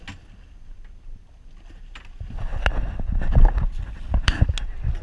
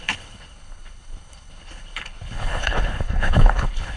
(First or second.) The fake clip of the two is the second